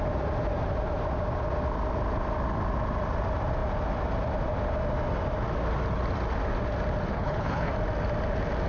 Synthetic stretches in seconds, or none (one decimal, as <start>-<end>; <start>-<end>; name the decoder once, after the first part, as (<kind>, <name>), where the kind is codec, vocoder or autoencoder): 7.1-7.7 (codec, HILCodec)